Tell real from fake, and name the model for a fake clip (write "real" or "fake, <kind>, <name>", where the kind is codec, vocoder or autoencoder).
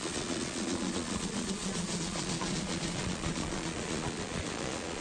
fake, vocoder, Vocos